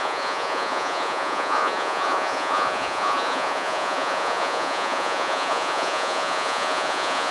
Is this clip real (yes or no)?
no